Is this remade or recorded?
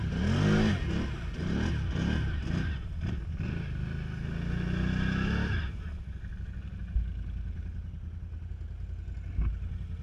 recorded